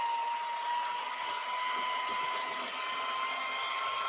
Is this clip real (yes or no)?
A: yes